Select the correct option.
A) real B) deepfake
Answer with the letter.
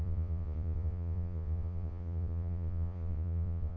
B